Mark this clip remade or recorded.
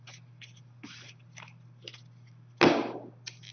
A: recorded